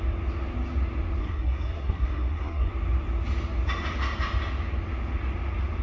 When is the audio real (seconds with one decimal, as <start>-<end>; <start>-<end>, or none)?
0.0-1.2; 2.7-5.8